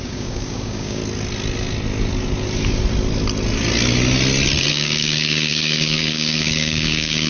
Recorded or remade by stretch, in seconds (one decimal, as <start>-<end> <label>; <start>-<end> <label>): 0.0-1.0 remade; 1.0-4.7 recorded; 4.7-7.3 remade